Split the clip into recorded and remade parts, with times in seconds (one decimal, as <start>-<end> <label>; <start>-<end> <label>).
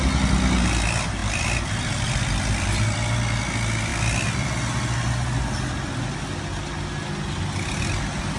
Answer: 0.0-1.2 recorded; 1.2-3.4 remade; 3.4-8.4 recorded